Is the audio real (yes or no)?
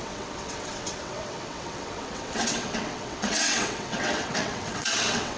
no